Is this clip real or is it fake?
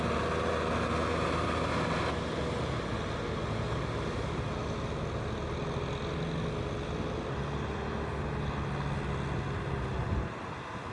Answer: real